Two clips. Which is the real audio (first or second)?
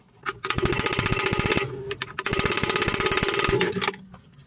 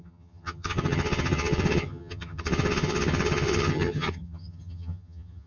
first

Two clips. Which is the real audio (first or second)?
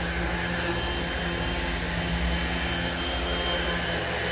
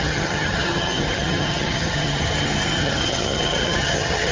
first